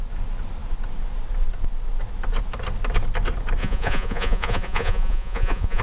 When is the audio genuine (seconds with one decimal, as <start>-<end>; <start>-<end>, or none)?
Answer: 0.0-3.6